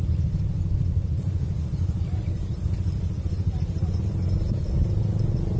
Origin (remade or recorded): recorded